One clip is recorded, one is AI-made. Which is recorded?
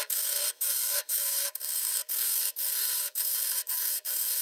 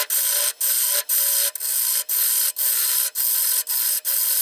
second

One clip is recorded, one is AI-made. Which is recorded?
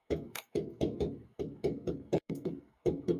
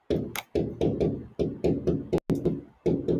second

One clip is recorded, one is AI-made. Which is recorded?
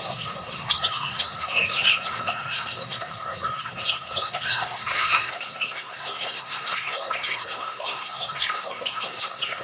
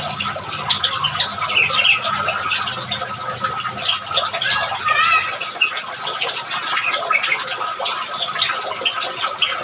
second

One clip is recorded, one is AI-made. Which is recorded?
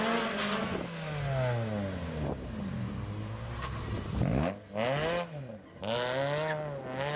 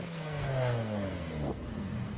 first